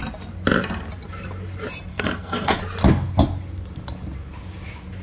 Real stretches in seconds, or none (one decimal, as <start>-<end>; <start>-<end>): 0.0-1.9; 2.6-5.0